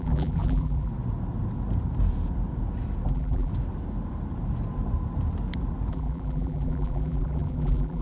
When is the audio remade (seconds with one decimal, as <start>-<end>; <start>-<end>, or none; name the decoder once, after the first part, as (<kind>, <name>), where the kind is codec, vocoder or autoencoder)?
0.0-0.9 (vocoder, BigVGAN v2); 3.1-3.5; 5.9-8.0